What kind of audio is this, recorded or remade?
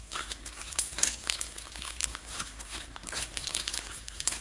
remade